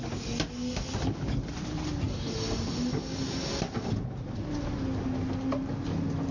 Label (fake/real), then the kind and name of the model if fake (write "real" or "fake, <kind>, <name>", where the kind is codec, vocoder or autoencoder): real